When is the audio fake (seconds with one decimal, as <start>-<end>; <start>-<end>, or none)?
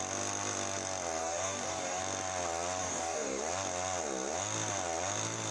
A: 1.2-2.0; 2.8-3.4